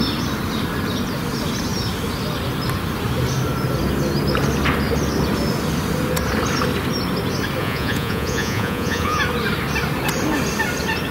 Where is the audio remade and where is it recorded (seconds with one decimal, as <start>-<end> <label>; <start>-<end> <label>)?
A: 0.0-7.6 recorded; 7.6-9.2 remade; 9.2-11.1 recorded